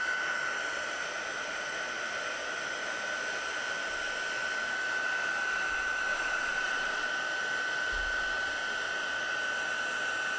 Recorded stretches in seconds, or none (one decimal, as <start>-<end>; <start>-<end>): 0.0-6.1; 7.1-10.4